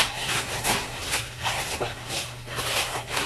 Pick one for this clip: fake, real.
fake